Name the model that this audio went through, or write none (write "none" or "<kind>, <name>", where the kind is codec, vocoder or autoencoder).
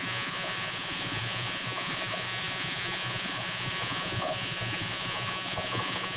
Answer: vocoder, Vocos